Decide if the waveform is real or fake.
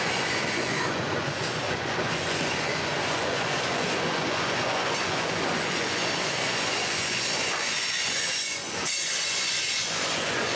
fake